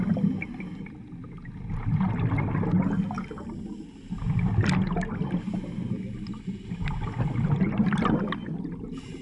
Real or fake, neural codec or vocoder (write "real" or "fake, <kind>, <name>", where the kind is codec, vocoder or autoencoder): real